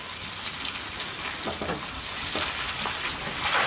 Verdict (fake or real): real